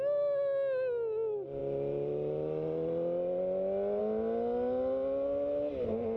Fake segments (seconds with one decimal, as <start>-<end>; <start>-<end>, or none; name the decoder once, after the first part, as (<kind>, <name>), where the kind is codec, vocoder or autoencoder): none